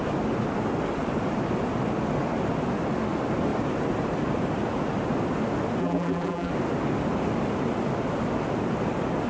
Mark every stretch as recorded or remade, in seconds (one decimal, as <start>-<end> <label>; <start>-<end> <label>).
0.0-5.8 recorded; 5.8-6.5 remade; 6.5-9.3 recorded